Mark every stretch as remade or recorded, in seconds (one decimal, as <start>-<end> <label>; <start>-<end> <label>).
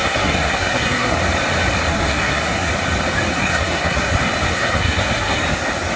0.0-1.2 remade; 1.2-1.9 recorded; 1.9-2.7 remade; 2.7-3.3 recorded; 3.3-4.1 remade; 4.1-4.5 recorded; 4.5-5.4 remade; 5.4-6.0 recorded